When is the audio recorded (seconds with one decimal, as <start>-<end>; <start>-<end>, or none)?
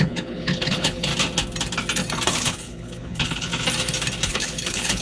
1.1-2.3; 3.5-4.3